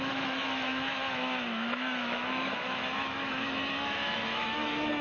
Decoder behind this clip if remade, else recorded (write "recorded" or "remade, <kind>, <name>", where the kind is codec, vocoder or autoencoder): remade, autoencoder, DAC-VAE